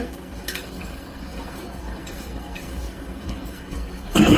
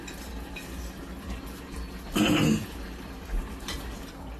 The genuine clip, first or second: second